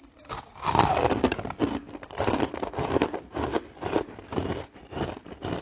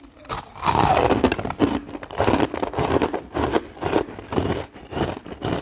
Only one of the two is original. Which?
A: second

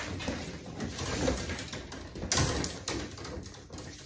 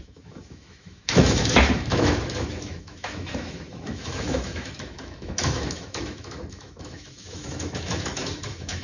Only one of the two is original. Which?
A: first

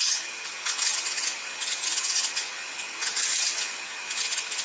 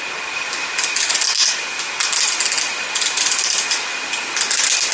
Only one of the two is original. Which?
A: second